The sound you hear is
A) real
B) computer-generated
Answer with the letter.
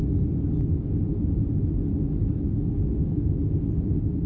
A